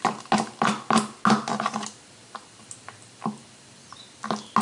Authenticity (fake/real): real